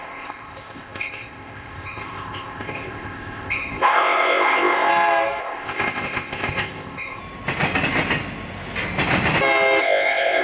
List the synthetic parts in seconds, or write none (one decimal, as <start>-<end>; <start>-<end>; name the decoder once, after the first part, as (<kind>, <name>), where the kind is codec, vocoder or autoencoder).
0.0-4.9 (codec, ZipCodec); 5.4-7.2; 9.8-10.4